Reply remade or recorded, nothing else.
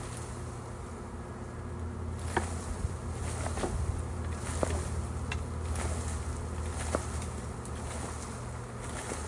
recorded